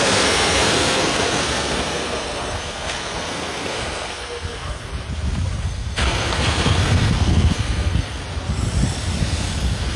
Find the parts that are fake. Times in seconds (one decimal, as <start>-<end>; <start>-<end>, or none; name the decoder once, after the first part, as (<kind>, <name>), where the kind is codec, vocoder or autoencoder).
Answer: 0.0-4.9 (codec, SNAC); 5.6-8.2; 9.2-10.0